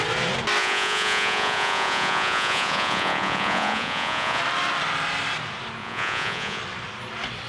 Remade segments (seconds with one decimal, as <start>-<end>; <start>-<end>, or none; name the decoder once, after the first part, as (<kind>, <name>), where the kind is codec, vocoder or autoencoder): 0.6-4.4 (vocoder, Vocos); 5.8-6.6